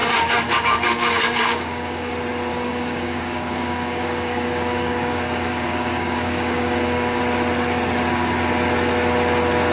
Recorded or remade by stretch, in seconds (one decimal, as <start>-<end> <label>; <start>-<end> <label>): 0.0-2.1 remade; 2.1-2.5 recorded; 2.5-7.2 remade; 7.2-9.7 recorded